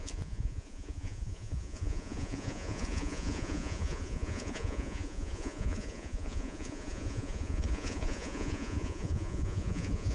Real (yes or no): no